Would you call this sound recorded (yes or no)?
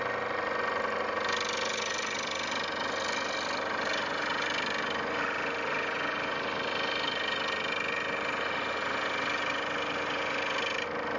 yes